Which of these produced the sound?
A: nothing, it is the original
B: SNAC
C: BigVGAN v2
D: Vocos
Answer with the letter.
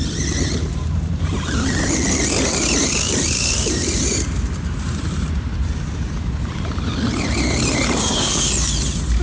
C